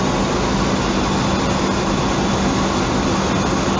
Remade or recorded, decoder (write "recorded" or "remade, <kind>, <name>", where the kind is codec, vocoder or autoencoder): recorded